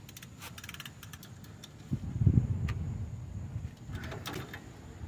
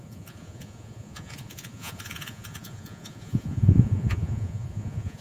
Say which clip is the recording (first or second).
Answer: first